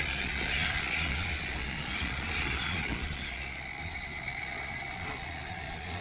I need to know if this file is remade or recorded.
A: remade